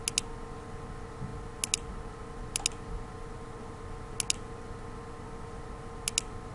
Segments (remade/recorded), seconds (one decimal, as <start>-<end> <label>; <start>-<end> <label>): 0.0-6.5 recorded